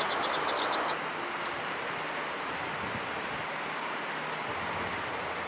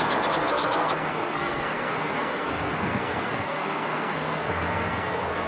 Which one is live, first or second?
first